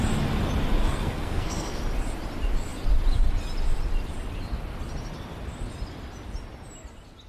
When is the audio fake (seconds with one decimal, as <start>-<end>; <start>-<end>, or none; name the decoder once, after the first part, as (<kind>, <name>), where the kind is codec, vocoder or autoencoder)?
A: 0.8-1.8 (codec, SNAC)

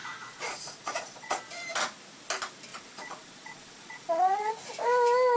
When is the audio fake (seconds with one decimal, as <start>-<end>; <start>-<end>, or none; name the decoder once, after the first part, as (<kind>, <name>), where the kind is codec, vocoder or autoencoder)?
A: 0.0-1.4 (vocoder, Vocos); 2.7-4.5

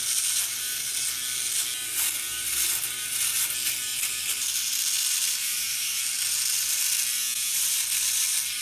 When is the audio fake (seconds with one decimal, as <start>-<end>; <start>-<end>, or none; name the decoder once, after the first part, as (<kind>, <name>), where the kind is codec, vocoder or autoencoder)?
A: 5.4-6.0 (codec, DAC)

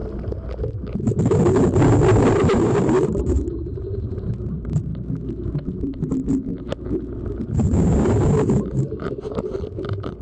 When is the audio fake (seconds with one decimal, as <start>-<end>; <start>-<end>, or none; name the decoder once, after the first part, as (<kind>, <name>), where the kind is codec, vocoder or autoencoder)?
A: 2.3-4.9 (vocoder, BigVGAN v2); 5.7-6.5; 7.3-10.2